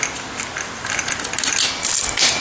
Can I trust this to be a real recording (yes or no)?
yes